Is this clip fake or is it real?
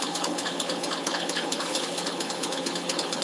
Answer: fake